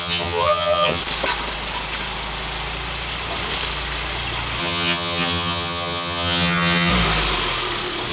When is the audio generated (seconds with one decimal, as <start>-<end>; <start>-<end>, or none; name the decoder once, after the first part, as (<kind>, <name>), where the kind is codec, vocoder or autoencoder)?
0.0-1.0 (vocoder, HiFi-GAN); 4.6-6.9